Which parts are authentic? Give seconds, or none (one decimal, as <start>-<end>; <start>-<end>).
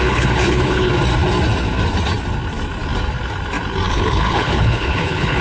0.9-3.9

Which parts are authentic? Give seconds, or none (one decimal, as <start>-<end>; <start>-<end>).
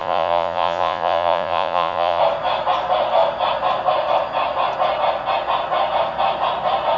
2.2-7.0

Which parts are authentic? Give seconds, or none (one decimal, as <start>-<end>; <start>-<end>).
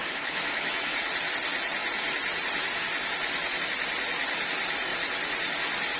1.0-6.0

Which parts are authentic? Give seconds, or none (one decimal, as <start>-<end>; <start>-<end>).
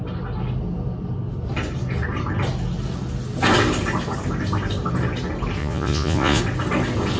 0.0-5.6; 6.4-7.2